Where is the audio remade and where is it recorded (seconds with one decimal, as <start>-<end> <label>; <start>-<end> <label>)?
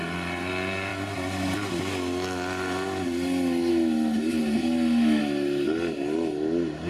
0.0-6.9 recorded